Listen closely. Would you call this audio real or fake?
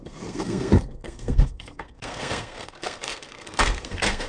fake